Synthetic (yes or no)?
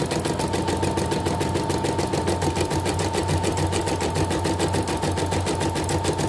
no